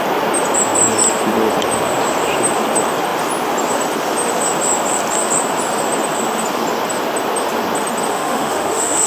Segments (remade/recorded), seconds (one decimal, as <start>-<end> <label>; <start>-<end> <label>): 0.0-8.1 recorded; 8.1-9.1 remade